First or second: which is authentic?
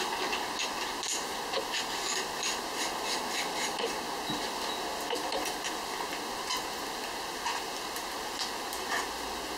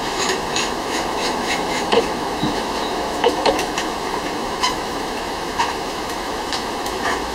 first